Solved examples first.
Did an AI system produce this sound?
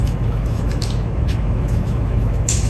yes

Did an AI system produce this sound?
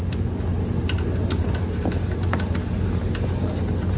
no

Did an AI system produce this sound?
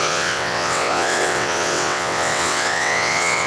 yes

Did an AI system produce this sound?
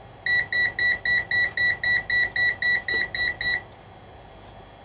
no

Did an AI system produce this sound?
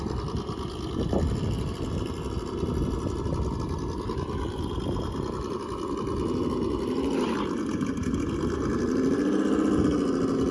no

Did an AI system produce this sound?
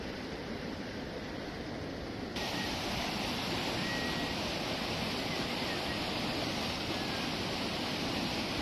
yes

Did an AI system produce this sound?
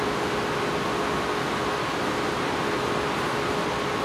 no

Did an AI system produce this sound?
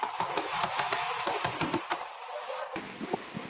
no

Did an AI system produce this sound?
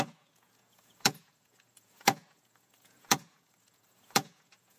yes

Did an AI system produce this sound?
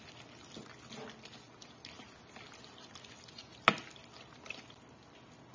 no